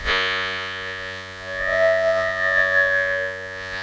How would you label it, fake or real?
fake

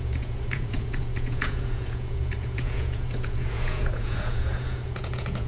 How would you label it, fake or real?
fake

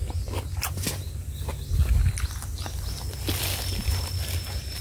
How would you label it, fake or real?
real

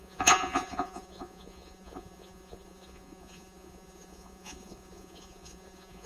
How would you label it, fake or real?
fake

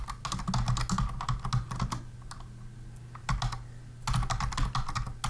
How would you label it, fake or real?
real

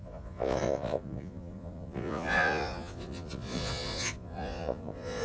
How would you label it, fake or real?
fake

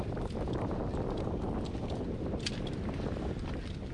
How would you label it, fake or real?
real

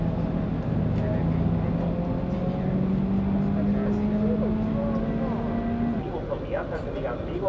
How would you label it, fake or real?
real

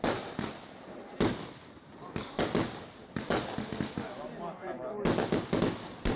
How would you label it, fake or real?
real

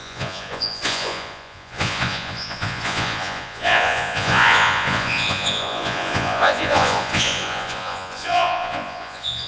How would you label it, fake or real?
fake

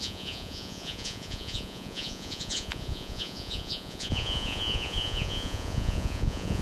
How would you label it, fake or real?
fake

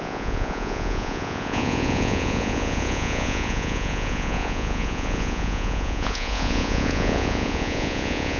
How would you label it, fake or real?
fake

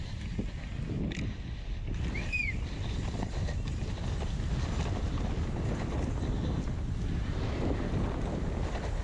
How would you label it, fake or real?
real